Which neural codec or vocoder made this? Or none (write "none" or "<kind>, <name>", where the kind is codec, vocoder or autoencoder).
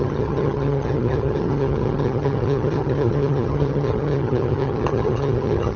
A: vocoder, HiFi-GAN